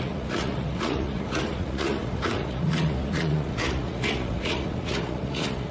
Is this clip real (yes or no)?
no